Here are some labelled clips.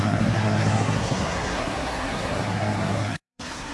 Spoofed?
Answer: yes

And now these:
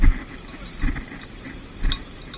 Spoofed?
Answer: no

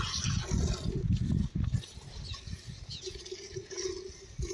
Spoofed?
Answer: no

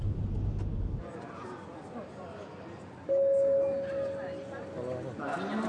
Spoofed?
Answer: no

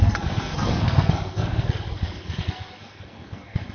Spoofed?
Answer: yes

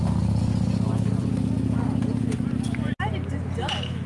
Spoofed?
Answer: no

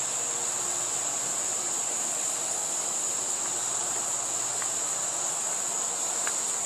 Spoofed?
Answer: no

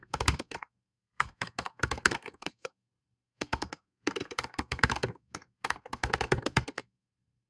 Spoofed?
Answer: yes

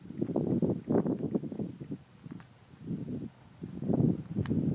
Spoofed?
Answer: no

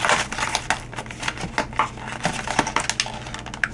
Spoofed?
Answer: no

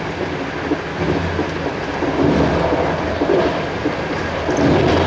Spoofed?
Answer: no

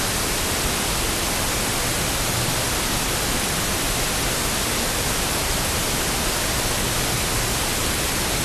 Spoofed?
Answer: no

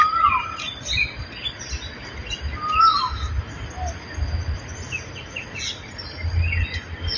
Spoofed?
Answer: no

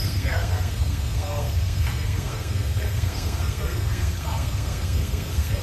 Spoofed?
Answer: yes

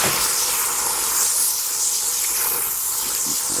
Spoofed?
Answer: no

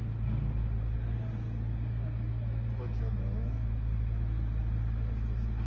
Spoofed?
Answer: no